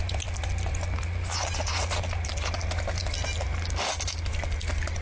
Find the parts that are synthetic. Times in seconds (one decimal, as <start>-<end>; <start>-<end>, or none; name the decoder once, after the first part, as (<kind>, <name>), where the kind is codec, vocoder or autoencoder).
none